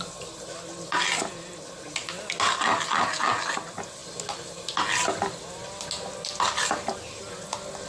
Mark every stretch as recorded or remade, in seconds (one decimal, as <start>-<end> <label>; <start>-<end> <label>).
0.0-7.9 recorded